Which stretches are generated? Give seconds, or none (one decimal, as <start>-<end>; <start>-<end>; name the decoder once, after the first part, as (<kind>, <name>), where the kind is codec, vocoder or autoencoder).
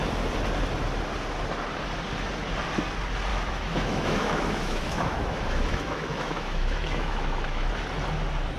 3.3-7.7 (autoencoder, DAC-VAE)